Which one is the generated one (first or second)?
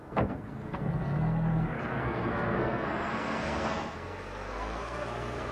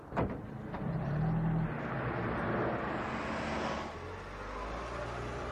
first